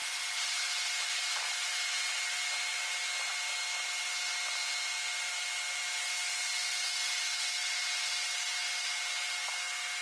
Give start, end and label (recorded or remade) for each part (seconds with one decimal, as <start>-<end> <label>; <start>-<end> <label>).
0.0-10.0 recorded